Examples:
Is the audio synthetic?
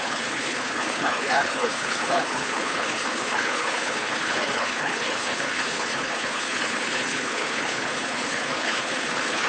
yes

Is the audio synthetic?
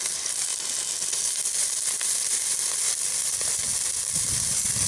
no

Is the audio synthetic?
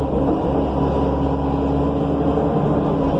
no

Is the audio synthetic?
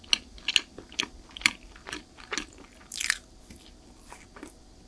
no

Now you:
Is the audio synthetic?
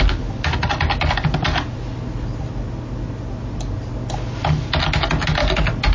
no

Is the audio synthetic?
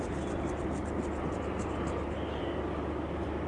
no